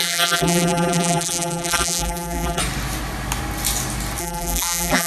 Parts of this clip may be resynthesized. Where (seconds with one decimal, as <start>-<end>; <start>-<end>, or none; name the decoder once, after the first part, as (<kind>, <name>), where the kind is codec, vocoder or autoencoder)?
0.0-2.6 (vocoder, BigVGAN v2); 4.2-5.1